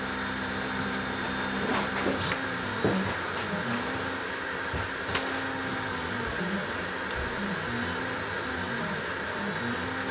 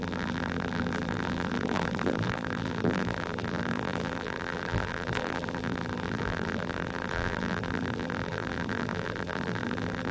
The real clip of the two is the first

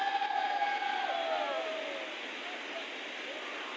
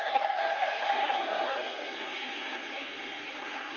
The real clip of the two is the first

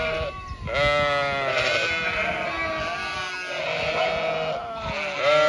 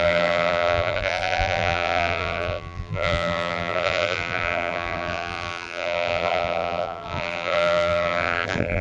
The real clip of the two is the first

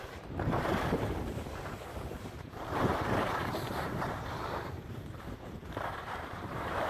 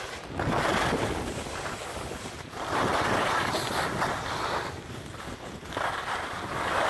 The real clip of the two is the second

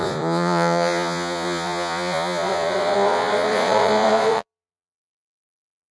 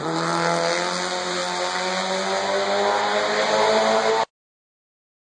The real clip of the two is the second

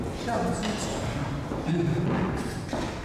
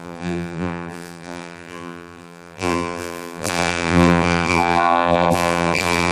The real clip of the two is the first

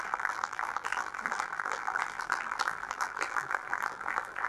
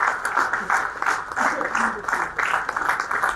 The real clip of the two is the second